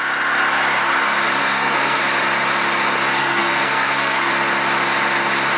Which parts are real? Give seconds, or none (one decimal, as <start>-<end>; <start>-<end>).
0.0-1.4; 2.0-3.2; 4.3-5.6